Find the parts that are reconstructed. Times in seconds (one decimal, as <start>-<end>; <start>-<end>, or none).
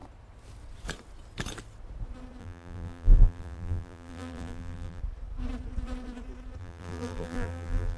2.4-5.0; 6.6-8.0